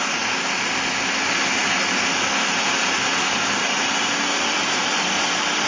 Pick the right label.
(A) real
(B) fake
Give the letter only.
A